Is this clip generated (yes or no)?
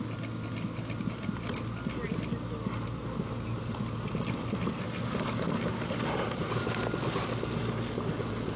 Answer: no